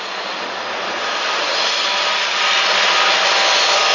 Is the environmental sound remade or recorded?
recorded